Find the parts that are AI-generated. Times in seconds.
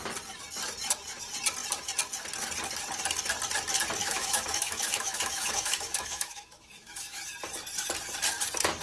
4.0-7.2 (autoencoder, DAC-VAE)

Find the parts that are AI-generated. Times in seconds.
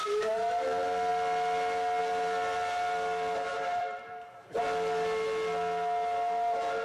3.5-4.6 (vocoder, BigVGAN v2)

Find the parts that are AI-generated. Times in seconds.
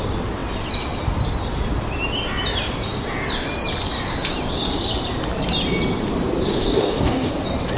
6.6-7.3 (codec, DAC)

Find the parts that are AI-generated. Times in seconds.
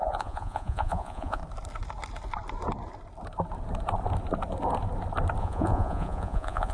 0.0-1.4 (vocoder, Vocos); 5.4-6.7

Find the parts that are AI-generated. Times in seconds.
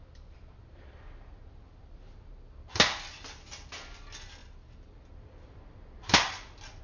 none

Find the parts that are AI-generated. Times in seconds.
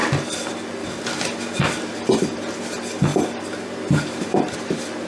none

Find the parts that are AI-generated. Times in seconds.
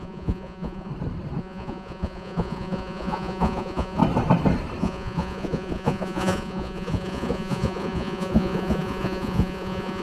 0.0-0.9 (vocoder, Vocos); 1.4-4.0; 4.8-10.0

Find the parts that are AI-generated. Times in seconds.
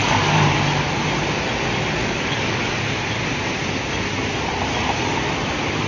0.0-0.5 (codec, DAC); 2.0-2.8